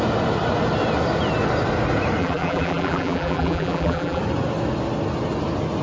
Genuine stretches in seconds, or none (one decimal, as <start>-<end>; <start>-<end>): 0.0-2.2; 4.2-5.8